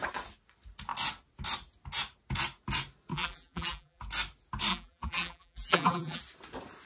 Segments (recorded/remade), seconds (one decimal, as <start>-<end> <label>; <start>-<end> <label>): 0.0-3.1 recorded; 3.1-4.0 remade; 4.0-4.7 recorded; 4.7-6.2 remade; 6.2-6.9 recorded